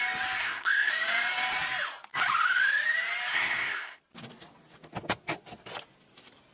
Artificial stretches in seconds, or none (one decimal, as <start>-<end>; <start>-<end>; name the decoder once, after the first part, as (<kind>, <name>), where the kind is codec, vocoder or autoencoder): 0.4-0.9 (codec, SNAC); 3.3-4.0